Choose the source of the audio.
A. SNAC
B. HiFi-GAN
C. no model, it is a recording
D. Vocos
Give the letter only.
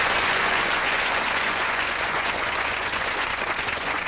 D